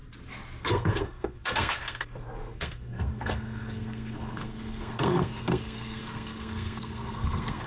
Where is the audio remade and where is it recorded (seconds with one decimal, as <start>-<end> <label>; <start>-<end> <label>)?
0.0-0.6 recorded; 0.6-7.7 remade